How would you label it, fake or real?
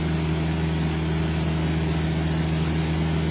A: real